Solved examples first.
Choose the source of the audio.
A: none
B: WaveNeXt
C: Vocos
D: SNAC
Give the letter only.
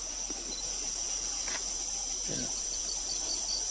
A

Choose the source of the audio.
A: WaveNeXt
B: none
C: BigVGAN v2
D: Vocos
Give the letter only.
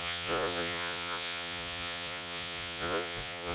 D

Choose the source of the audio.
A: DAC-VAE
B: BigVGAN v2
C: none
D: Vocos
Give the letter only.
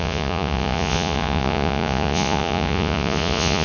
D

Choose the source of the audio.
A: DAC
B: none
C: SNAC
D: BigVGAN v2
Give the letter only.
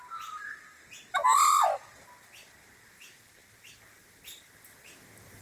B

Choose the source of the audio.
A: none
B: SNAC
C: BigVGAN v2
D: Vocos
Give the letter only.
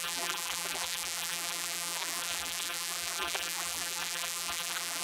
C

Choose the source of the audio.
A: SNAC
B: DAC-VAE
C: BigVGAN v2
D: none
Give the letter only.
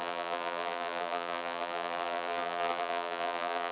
C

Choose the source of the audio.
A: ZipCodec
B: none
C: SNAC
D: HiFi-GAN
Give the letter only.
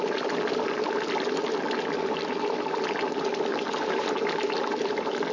B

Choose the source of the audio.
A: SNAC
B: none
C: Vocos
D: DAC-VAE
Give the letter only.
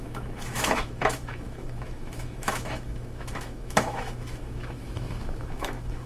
D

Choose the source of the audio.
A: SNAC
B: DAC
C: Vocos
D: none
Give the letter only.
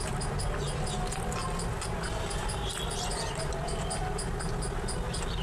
D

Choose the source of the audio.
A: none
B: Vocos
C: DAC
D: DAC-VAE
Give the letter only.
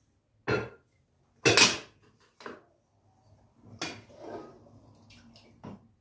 A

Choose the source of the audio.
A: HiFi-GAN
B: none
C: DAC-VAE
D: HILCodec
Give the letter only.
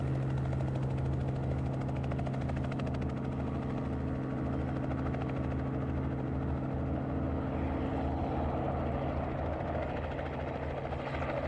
B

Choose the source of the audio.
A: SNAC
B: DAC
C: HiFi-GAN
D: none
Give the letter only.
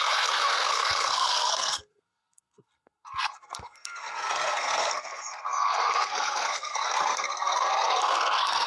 A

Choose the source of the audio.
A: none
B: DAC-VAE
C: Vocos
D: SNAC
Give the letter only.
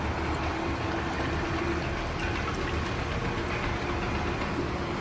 A